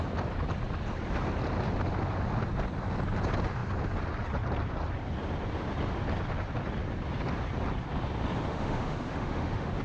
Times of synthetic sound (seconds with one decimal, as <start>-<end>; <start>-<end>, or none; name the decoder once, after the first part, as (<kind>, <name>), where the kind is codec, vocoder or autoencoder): 8.5-9.8 (autoencoder, DAC-VAE)